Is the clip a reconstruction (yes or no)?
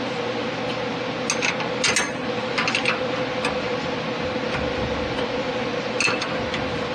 no